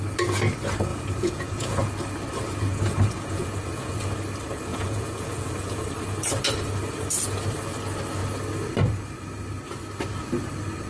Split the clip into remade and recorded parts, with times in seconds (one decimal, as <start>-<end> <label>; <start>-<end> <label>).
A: 0.0-0.9 recorded; 0.9-1.8 remade; 1.8-2.7 recorded; 2.7-4.0 remade; 4.0-4.7 recorded; 4.7-5.9 remade; 5.9-10.9 recorded

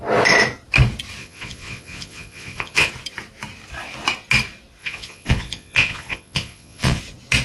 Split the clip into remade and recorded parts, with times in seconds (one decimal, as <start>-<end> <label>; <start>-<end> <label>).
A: 0.0-1.2 recorded; 1.2-2.9 remade; 2.9-4.8 recorded; 4.8-7.0 remade; 7.0-7.4 recorded